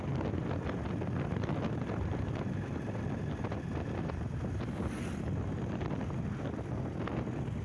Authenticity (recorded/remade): recorded